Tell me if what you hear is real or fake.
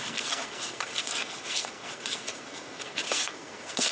fake